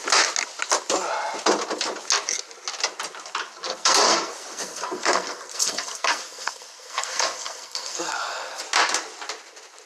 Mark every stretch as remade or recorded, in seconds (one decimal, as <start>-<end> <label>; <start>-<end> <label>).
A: 0.0-3.7 recorded; 3.7-8.6 remade; 8.6-9.9 recorded